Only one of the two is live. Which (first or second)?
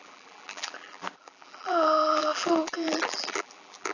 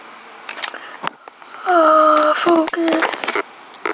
second